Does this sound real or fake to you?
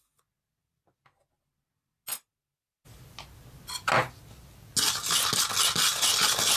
real